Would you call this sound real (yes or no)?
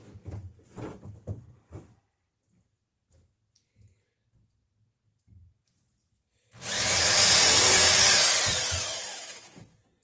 yes